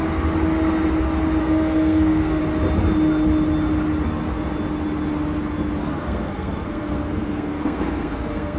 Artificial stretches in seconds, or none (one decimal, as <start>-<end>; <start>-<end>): 1.4-2.4; 5.8-8.6